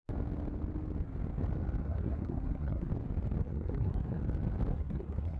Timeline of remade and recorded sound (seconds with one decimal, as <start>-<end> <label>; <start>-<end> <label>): 0.0-1.8 recorded; 1.8-2.9 remade; 2.9-3.4 recorded; 3.4-4.2 remade; 4.2-4.7 recorded; 4.7-5.4 remade